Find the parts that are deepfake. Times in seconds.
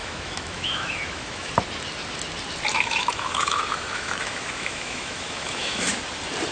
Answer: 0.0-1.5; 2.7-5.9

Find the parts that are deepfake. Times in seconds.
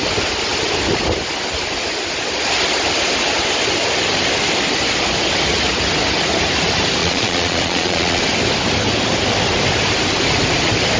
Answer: 7.0-8.2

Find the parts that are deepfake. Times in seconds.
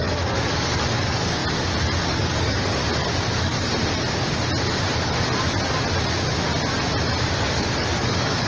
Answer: 0.0-1.4; 2.0-2.8; 3.3-3.7; 7.4-8.5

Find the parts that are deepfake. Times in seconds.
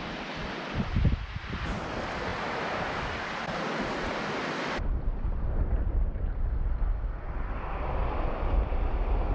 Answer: none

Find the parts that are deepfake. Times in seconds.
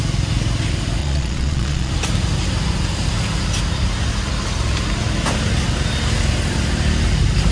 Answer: 1.0-1.9